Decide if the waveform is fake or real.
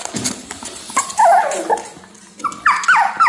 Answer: real